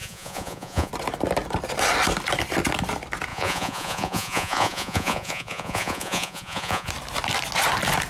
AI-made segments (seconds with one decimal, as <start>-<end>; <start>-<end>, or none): 0.0-0.9; 3.3-6.9